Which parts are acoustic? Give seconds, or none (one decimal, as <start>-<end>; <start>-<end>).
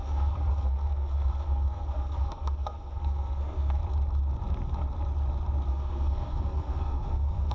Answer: 3.8-5.7